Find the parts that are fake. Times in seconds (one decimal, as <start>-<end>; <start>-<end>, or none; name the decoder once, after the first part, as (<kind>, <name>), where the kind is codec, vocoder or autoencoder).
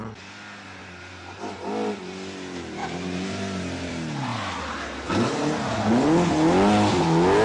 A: 0.8-1.5 (vocoder, BigVGAN v2); 2.8-3.9